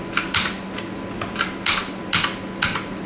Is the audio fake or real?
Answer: real